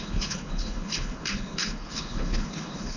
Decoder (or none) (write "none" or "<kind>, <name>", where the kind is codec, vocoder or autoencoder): codec, HILCodec